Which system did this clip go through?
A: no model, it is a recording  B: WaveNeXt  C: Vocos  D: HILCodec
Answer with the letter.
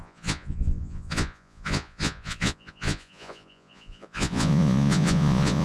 C